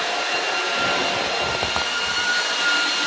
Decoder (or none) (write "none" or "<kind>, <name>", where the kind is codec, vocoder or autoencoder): none